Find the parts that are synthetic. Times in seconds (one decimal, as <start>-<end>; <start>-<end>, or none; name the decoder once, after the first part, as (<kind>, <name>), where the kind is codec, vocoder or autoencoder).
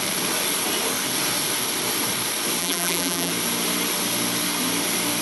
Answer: 2.6-3.3 (vocoder, BigVGAN v2)